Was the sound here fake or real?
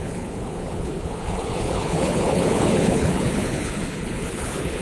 fake